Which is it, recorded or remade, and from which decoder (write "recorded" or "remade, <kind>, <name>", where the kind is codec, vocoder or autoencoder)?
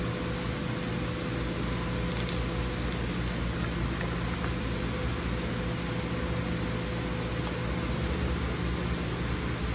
recorded